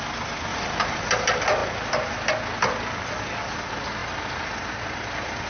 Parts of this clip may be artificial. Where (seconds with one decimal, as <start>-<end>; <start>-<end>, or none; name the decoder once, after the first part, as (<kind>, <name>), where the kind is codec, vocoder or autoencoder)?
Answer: 0.5-1.1 (vocoder, BigVGAN v2)